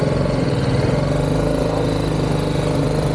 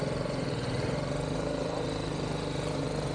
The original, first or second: first